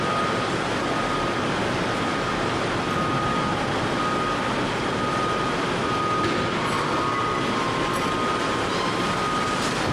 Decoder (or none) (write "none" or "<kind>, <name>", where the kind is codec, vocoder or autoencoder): none